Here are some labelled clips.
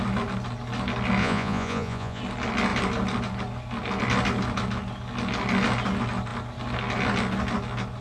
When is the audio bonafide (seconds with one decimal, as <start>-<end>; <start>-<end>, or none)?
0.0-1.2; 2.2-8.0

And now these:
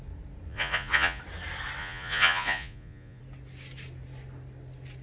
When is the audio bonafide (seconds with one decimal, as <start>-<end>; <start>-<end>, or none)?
0.0-0.5; 1.2-1.8; 3.2-5.0

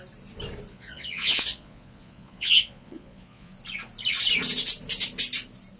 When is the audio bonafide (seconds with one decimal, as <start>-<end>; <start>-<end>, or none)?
0.0-0.7; 3.5-5.8

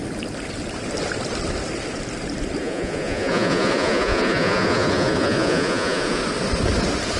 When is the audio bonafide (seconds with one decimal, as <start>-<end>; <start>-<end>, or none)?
0.0-2.6; 6.2-7.2

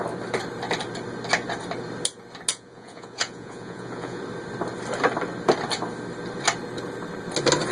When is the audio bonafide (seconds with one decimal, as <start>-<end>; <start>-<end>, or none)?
0.0-2.5; 4.2-7.7

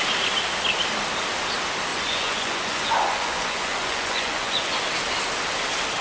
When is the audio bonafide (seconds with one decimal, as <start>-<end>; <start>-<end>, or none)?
0.0-1.9; 4.8-6.0